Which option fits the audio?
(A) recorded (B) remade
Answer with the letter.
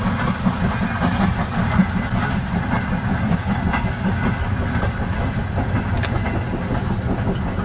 A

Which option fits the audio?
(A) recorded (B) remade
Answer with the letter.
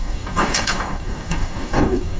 B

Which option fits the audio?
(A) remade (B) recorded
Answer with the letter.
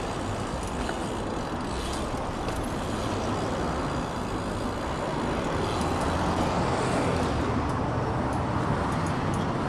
B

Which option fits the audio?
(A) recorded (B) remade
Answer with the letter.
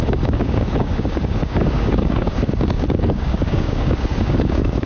B